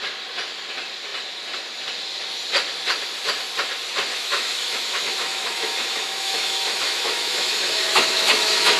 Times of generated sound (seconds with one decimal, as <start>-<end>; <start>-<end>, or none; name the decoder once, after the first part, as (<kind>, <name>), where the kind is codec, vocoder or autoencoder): 4.1-8.8 (autoencoder, DAC-VAE)